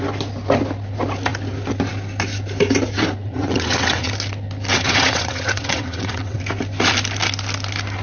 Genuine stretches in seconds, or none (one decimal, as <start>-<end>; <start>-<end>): 0.0-3.2; 4.1-4.7; 6.4-8.0